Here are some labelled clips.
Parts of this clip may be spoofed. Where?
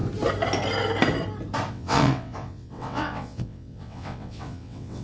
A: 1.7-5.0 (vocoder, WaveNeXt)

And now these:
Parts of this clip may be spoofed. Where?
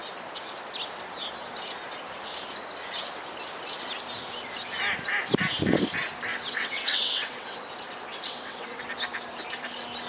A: 6.3-7.7 (vocoder, WaveNeXt); 8.1-8.8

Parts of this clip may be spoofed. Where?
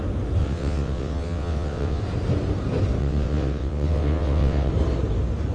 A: 0.4-2.0 (vocoder, WaveNeXt); 3.0-4.7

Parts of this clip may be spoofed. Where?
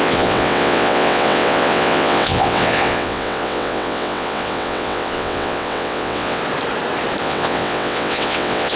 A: 0.0-6.4 (vocoder, WaveNeXt); 7.2-8.8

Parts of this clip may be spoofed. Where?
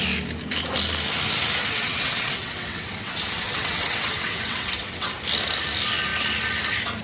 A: 1.6-5.1 (vocoder, WaveNeXt)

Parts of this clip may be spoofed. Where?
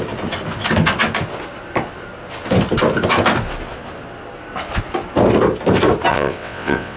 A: 6.1-7.0 (vocoder, WaveNeXt)